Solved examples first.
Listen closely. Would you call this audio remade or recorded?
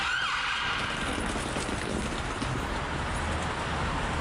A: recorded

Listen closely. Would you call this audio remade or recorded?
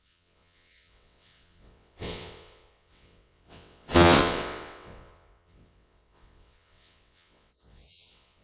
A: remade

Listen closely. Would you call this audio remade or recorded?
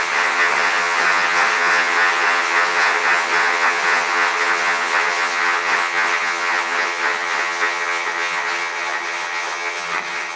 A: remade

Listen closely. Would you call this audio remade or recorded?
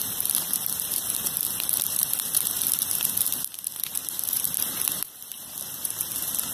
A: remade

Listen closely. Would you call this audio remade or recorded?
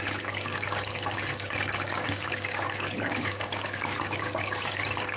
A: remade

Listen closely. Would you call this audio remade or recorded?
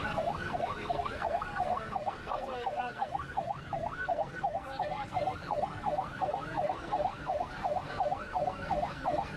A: remade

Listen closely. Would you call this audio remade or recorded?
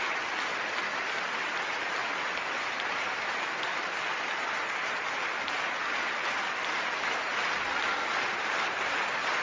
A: recorded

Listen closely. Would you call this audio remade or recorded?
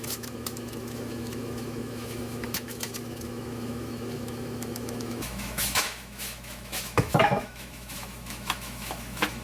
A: remade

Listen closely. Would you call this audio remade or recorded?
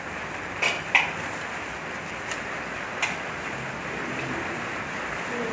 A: recorded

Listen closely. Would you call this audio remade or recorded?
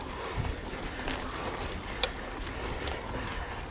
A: recorded